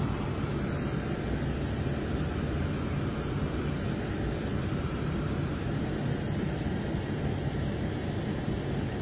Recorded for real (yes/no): yes